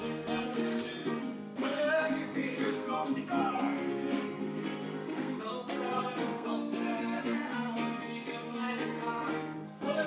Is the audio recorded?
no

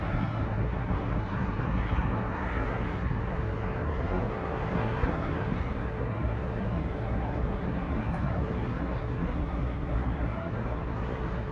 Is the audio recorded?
no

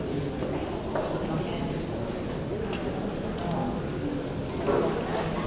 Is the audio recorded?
yes